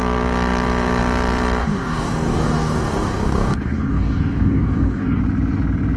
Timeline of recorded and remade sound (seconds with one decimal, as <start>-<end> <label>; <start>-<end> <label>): 0.0-1.6 recorded; 1.6-5.2 remade; 5.2-6.0 recorded